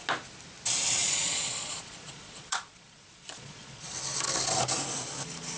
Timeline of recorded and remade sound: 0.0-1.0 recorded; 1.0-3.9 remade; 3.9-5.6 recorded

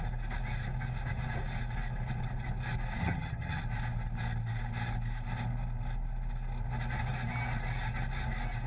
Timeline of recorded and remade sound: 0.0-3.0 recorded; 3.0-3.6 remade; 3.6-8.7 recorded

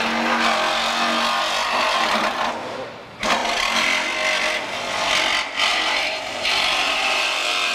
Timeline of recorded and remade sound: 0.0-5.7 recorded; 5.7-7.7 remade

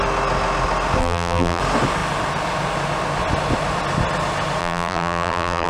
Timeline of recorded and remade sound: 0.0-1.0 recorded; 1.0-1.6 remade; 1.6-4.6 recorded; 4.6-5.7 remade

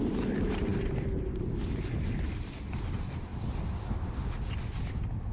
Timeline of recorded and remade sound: 0.0-5.3 recorded

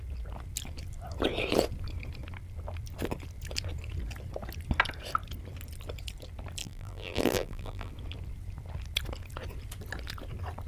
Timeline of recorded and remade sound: 0.0-6.6 recorded; 6.6-7.9 remade; 7.9-10.7 recorded

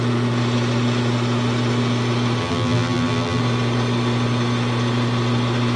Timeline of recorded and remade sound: 0.0-2.4 recorded; 2.4-3.4 remade; 3.4-5.8 recorded

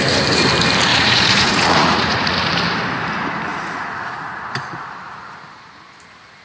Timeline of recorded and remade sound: 0.0-0.9 recorded; 0.9-2.5 remade; 2.5-3.5 recorded; 3.5-4.4 remade; 4.4-6.4 recorded